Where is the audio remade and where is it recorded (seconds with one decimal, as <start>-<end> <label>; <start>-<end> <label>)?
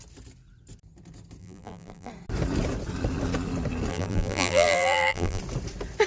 0.0-1.4 recorded; 1.4-2.1 remade; 2.1-3.9 recorded; 3.9-5.4 remade; 5.4-6.1 recorded